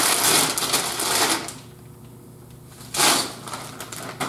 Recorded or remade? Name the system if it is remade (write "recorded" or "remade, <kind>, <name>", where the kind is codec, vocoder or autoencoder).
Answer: recorded